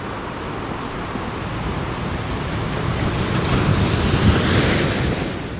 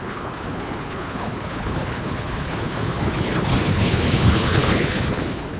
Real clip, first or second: first